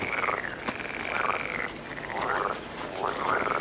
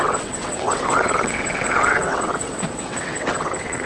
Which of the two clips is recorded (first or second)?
first